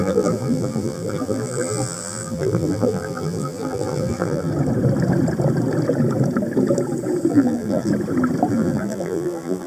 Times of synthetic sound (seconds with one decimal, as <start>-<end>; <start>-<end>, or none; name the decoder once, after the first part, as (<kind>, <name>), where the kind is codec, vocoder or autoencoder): 0.0-4.5 (vocoder, BigVGAN v2); 7.3-7.9; 8.5-9.7